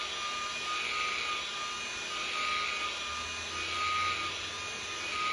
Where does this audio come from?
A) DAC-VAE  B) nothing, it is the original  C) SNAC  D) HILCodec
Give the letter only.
B